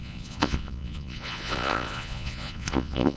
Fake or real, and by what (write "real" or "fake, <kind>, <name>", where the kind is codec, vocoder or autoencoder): fake, vocoder, Vocos